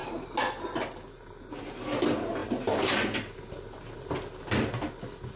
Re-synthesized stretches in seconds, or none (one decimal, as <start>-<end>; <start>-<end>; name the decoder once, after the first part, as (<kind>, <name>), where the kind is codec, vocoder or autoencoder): none